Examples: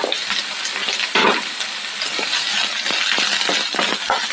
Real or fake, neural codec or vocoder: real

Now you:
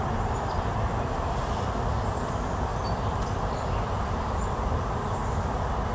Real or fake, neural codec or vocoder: real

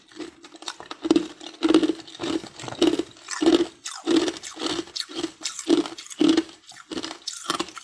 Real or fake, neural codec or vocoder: real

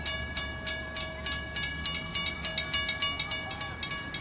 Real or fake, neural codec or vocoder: real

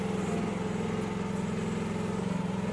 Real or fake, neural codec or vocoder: real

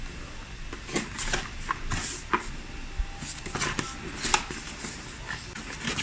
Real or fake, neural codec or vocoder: real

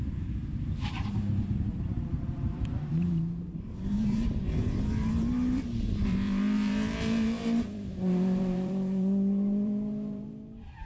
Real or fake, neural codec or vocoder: fake, vocoder, BigVGAN v2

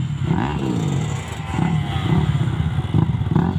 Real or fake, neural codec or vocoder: real